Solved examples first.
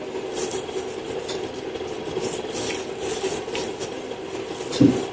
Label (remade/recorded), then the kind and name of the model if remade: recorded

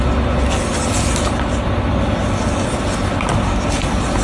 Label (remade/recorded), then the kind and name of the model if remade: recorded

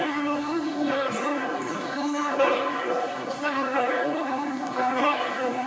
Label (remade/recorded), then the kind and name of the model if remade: remade, codec, SNAC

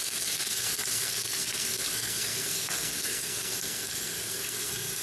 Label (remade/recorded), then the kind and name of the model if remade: remade, codec, SNAC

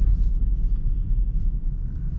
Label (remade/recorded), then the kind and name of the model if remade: recorded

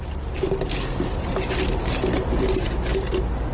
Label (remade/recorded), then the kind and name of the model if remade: recorded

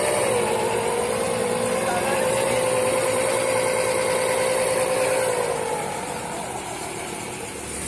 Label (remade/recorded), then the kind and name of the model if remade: recorded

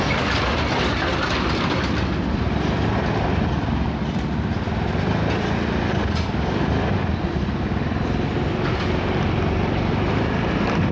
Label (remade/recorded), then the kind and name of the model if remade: recorded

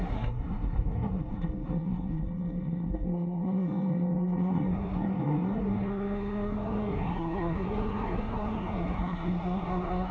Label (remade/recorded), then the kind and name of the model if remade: remade, codec, SNAC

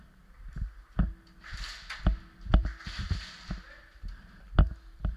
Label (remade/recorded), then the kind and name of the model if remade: recorded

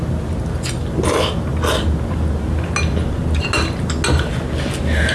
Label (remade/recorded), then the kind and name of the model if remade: recorded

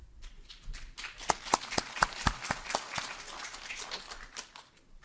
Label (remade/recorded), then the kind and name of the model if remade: recorded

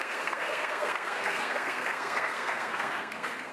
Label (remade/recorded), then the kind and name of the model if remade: remade, codec, SNAC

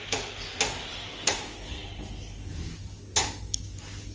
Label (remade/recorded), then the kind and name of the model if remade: recorded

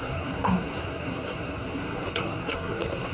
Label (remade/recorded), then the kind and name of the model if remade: remade, codec, SNAC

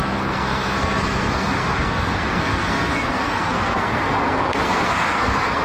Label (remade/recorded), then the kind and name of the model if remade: remade, codec, SNAC